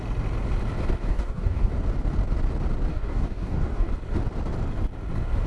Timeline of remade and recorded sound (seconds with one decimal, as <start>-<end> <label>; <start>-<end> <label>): 0.0-1.1 recorded; 1.1-1.7 remade; 1.7-2.9 recorded; 2.9-3.9 remade; 3.9-5.5 recorded